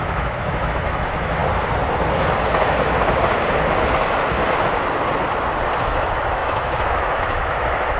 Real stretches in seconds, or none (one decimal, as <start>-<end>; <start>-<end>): 1.4-5.8